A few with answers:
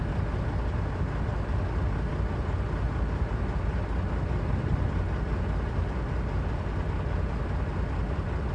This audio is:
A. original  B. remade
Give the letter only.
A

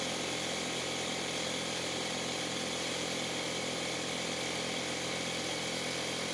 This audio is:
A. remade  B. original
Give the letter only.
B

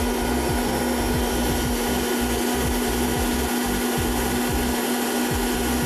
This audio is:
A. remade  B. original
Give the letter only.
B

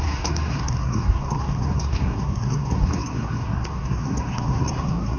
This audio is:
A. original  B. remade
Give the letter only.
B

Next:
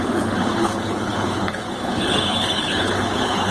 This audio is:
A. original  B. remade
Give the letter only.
B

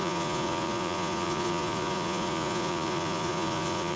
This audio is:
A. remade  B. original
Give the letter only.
A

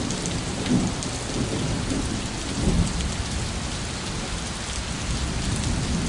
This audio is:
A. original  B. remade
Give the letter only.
A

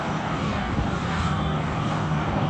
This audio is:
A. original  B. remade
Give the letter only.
B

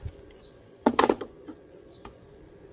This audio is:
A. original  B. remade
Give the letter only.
B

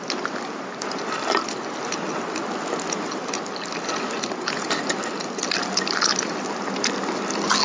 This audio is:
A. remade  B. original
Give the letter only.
B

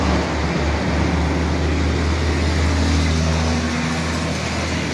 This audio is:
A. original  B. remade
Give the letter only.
A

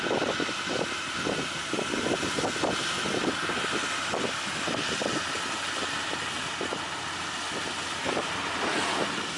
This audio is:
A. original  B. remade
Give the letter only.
A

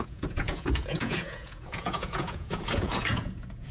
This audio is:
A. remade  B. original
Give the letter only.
A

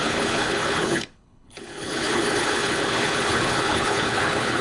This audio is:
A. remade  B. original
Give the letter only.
A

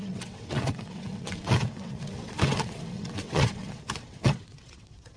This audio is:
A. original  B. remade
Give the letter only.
B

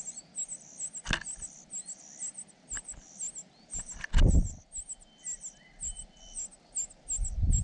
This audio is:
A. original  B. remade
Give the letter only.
A